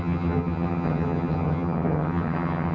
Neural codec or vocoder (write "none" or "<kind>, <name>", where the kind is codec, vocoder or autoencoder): vocoder, HiFi-GAN